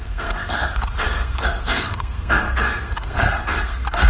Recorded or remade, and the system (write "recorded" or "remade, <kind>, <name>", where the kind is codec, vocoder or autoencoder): remade, codec, SNAC